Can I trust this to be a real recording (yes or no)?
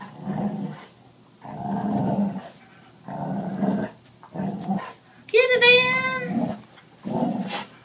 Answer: yes